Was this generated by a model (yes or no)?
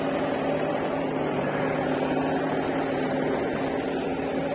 no